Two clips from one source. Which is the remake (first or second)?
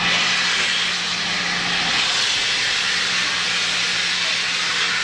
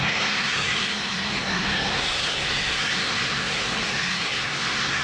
second